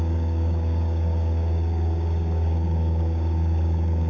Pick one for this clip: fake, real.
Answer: fake